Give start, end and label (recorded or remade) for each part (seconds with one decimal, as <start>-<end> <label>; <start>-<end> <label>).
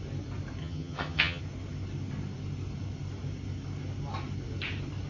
0.0-0.6 recorded; 0.6-1.4 remade; 1.4-5.1 recorded